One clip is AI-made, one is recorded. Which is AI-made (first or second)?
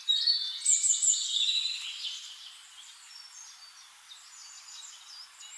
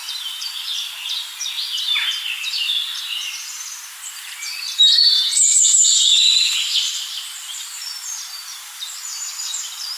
second